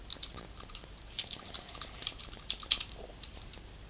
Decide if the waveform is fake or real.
fake